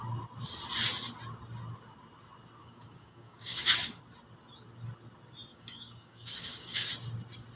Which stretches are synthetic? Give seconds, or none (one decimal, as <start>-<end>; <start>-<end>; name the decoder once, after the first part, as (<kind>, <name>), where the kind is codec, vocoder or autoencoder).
2.6-4.0 (codec, DAC); 5.5-6.9